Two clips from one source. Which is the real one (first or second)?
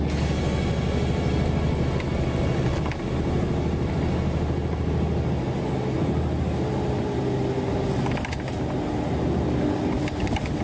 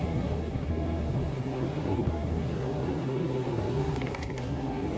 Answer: first